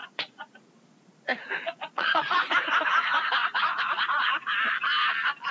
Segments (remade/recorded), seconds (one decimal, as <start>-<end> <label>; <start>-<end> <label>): 0.0-0.5 remade; 0.5-1.3 recorded; 1.3-2.5 remade; 2.5-3.4 recorded; 3.4-4.6 remade; 4.6-5.5 recorded